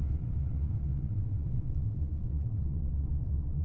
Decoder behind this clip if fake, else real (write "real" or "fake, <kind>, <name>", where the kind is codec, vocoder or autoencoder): fake, vocoder, WaveNeXt